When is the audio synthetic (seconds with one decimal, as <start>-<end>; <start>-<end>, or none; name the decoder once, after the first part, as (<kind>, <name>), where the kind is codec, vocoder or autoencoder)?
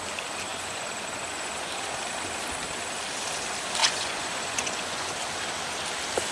0.5-1.7 (vocoder, Vocos); 3.8-5.1